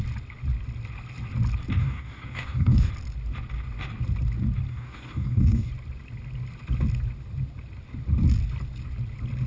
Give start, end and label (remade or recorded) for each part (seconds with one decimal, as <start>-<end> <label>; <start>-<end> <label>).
0.0-1.8 recorded; 1.8-2.9 remade; 2.9-4.7 recorded; 4.7-5.7 remade; 5.7-9.5 recorded